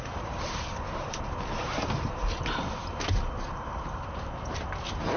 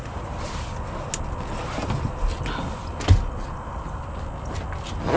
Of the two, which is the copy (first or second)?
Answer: first